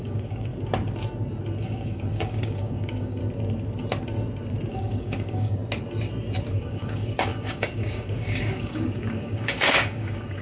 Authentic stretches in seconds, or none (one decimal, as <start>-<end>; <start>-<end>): 0.5-1.6; 3.2-4.7; 5.6-6.5